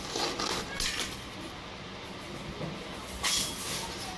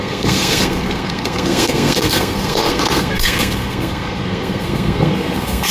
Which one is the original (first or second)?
first